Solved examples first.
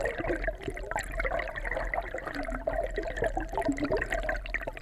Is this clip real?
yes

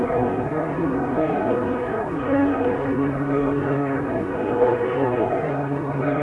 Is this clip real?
no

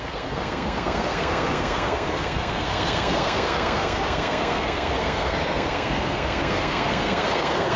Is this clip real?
no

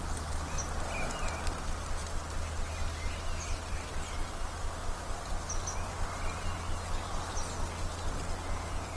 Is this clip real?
yes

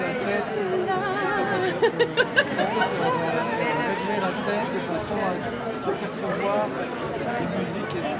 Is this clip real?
yes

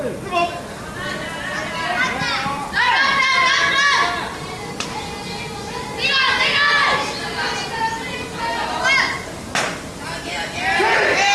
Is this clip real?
yes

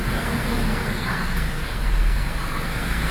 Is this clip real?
no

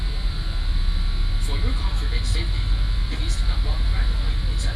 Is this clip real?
yes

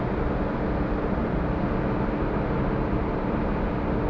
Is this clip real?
yes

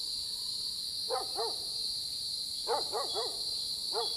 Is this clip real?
yes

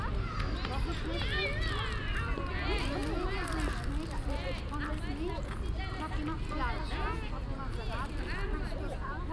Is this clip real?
yes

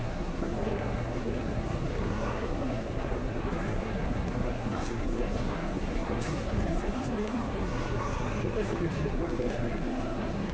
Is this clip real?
no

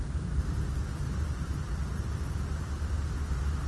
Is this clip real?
yes